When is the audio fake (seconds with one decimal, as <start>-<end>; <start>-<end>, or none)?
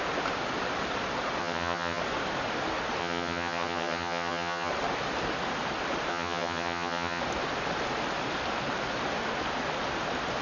1.4-2.0; 3.0-4.7; 6.1-7.2